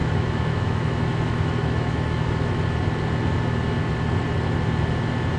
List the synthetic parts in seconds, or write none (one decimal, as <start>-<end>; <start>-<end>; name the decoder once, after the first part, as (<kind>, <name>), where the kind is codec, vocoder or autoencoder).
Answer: 0.0-2.6 (autoencoder, DAC-VAE)